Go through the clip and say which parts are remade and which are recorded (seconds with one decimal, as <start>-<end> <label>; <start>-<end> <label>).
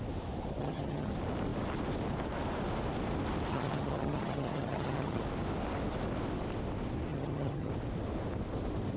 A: 0.0-0.6 recorded; 0.6-1.1 remade; 1.1-3.5 recorded; 3.5-5.2 remade; 5.2-7.1 recorded; 7.1-7.7 remade; 7.7-9.0 recorded